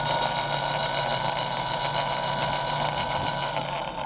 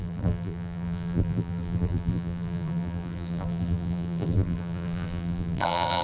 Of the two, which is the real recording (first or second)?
first